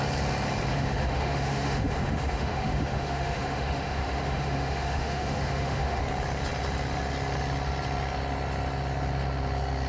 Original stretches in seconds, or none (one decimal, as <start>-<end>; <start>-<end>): 0.0-0.7; 6.0-9.9